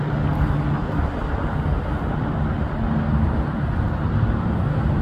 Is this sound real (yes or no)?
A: yes